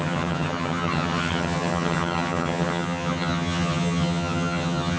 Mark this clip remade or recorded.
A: remade